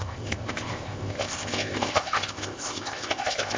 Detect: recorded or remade remade